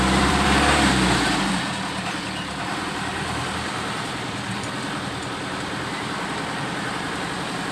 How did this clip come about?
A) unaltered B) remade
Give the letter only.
B